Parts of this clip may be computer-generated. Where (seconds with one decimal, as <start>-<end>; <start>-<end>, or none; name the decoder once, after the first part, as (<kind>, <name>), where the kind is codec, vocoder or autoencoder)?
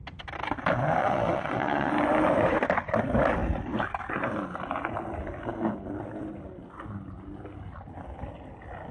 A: 1.0-1.9 (vocoder, WaveNeXt)